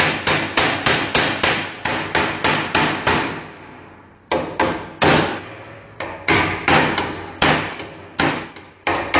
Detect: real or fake real